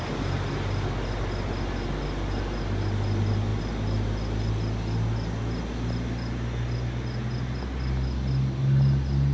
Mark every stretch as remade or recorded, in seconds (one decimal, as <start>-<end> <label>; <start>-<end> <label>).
0.0-9.3 recorded